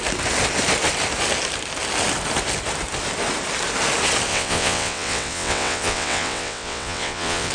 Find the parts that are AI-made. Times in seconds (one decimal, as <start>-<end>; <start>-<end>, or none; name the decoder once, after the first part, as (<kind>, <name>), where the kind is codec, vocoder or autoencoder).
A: 4.3-7.5 (vocoder, WaveNeXt)